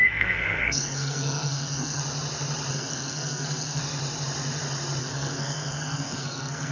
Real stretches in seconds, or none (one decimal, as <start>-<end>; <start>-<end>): 2.0-2.7; 3.8-5.0

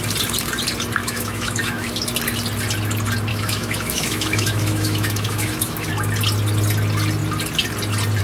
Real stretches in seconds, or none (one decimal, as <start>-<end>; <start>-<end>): 0.0-1.0; 1.9-3.3; 5.9-8.2

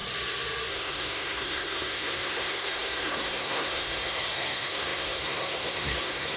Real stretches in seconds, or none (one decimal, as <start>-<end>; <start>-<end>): 0.0-0.7

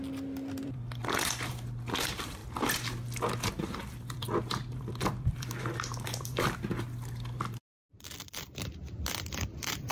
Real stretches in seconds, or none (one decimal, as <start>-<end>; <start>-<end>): 1.0-1.5; 2.4-3.8